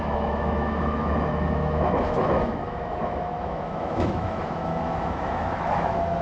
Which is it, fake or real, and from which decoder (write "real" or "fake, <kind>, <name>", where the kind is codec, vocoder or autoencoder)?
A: fake, autoencoder, DAC-VAE